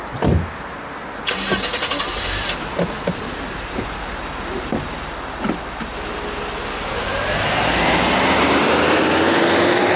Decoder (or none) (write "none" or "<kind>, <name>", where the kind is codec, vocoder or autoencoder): none